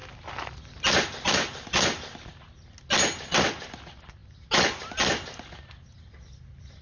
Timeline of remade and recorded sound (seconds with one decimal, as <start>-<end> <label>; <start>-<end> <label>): 0.0-6.8 recorded